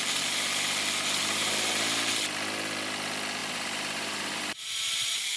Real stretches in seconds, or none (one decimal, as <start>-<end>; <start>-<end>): 0.0-1.2; 1.7-3.4